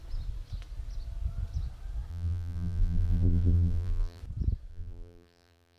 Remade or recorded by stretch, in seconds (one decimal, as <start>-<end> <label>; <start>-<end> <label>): 0.0-2.1 recorded; 2.1-4.2 remade; 4.2-4.7 recorded; 4.7-5.8 remade